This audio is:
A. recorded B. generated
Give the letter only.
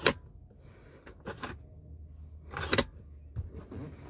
A